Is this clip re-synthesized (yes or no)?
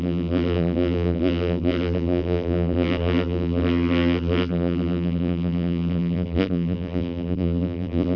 yes